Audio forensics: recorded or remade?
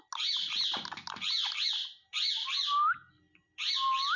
recorded